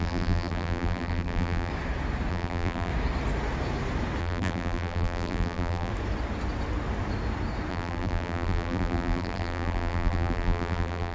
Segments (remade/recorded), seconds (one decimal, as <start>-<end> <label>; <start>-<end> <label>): 0.0-1.7 remade; 1.7-2.3 recorded; 2.3-2.9 remade; 2.9-4.2 recorded; 4.2-5.9 remade; 5.9-7.7 recorded; 7.7-11.1 remade